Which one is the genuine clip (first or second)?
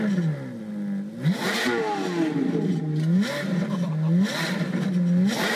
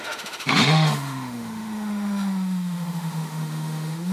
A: first